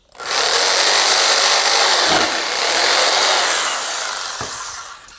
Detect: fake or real real